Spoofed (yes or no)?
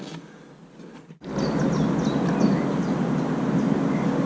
no